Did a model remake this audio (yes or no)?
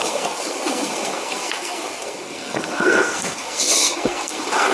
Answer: yes